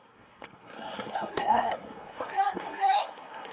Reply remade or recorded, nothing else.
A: remade